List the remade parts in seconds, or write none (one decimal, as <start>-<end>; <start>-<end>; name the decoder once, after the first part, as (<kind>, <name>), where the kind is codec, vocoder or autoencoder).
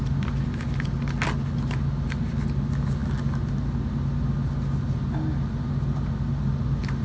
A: none